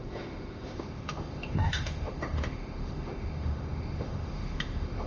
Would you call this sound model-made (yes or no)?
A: yes